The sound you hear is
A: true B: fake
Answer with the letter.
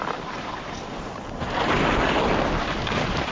A